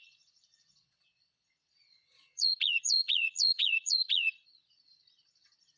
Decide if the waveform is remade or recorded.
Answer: remade